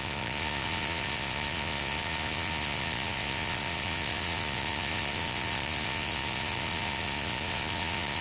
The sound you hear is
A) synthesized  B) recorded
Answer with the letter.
A